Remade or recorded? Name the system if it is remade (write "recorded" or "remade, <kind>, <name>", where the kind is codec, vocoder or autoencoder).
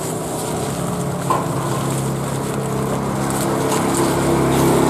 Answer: recorded